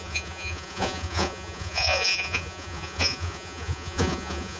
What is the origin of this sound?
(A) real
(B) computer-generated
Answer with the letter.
B